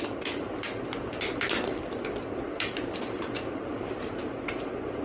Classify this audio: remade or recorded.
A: recorded